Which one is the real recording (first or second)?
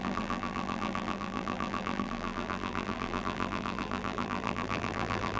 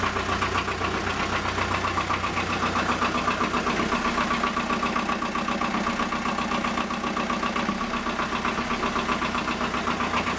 second